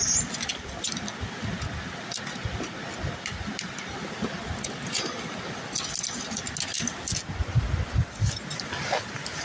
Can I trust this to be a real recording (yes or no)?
yes